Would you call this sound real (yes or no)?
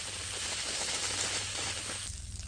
yes